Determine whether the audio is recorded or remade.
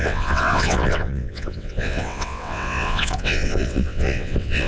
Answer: remade